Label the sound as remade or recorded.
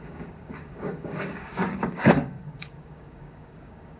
remade